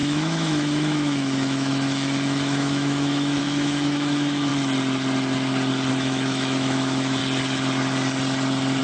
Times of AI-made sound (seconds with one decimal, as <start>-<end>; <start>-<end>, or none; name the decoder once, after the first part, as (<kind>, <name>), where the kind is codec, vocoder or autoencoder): 0.0-4.5 (autoencoder, DAC-VAE); 5.9-7.2